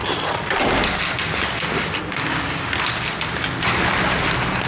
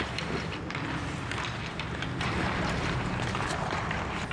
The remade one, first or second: second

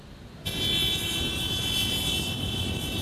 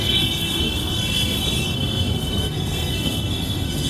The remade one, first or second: second